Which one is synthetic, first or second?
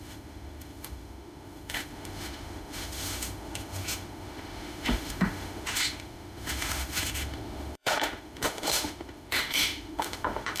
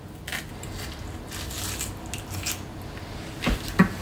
first